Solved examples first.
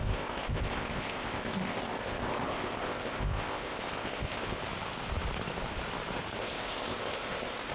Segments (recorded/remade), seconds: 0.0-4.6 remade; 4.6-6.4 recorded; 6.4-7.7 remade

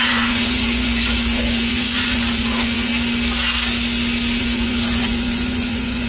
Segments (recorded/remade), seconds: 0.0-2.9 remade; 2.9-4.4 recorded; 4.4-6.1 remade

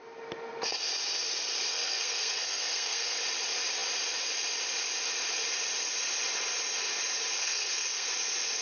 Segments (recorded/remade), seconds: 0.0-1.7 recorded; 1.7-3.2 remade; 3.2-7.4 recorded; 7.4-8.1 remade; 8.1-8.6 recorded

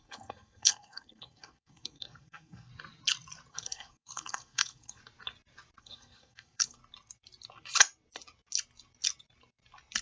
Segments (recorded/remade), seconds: 0.0-2.7 remade; 2.7-3.5 recorded; 3.5-5.0 remade; 5.0-5.8 recorded; 5.8-6.8 remade; 6.8-10.0 recorded

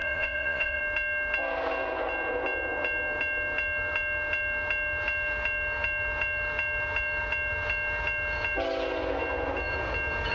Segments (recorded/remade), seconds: 0.0-0.8 remade; 0.8-10.3 recorded

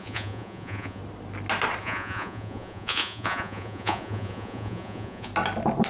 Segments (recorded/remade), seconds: 0.0-1.0 remade; 1.0-1.8 recorded; 1.8-5.3 remade; 5.3-5.9 recorded

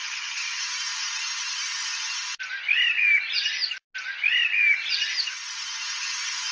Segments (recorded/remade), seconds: 0.0-0.6 remade; 0.6-6.5 recorded